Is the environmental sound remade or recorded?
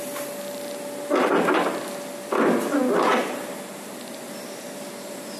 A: recorded